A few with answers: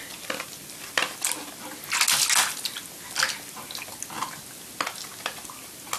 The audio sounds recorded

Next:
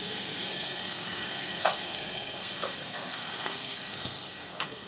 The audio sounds remade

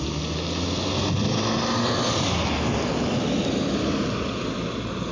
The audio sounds recorded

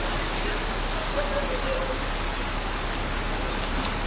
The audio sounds recorded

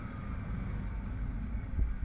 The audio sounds recorded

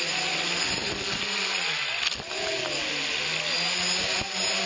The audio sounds recorded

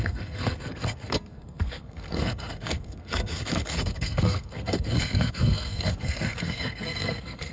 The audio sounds remade